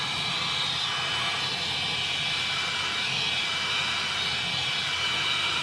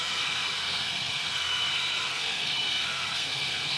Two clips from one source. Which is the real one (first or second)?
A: first